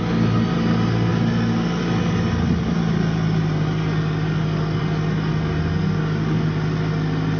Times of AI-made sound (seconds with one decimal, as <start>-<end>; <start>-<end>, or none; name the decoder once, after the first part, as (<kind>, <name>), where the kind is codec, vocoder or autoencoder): none